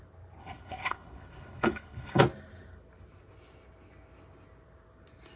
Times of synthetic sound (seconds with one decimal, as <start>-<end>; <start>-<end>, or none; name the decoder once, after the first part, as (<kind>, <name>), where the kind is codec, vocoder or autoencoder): 0.4-2.2 (codec, HILCodec)